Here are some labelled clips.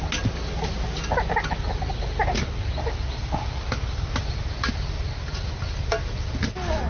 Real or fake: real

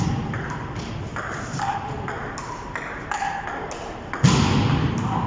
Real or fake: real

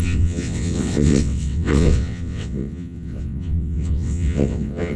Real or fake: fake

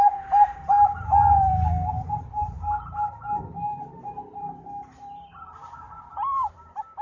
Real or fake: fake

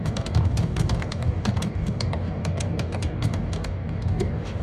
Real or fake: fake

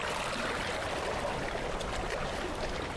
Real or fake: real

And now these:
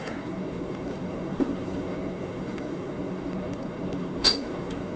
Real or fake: fake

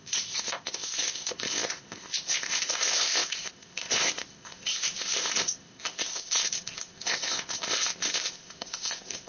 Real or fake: fake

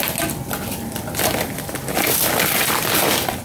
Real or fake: real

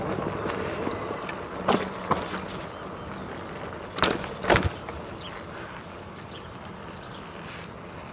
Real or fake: real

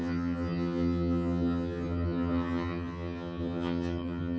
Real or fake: fake